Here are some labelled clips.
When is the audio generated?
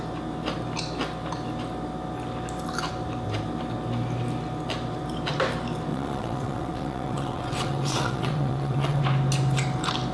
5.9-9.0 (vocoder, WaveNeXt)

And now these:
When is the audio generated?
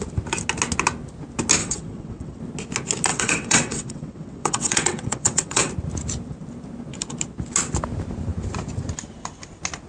1.6-2.4 (vocoder, WaveNeXt); 3.1-5.7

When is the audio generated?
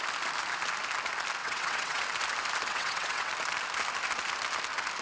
1.4-2.0 (vocoder, WaveNeXt); 2.7-3.3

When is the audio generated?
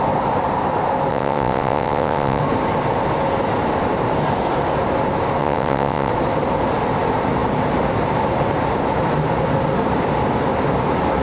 1.1-2.4 (vocoder, WaveNeXt); 5.4-6.1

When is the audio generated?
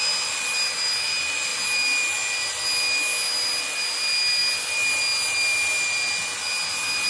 none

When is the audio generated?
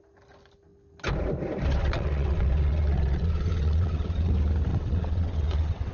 1.8-4.3 (vocoder, WaveNeXt); 4.7-5.9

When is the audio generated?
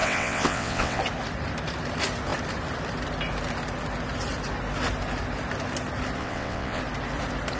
0.0-1.0 (vocoder, WaveNeXt); 6.2-6.8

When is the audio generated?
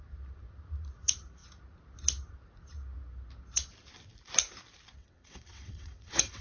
5.0-6.4 (vocoder, WaveNeXt)